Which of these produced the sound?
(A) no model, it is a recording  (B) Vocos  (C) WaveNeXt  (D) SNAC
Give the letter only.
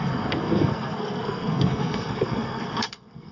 D